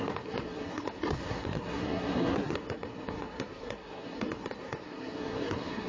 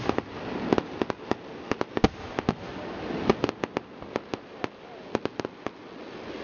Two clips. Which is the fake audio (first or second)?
first